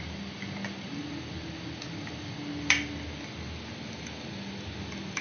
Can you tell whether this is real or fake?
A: real